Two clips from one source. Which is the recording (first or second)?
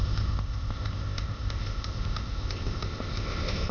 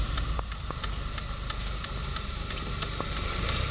second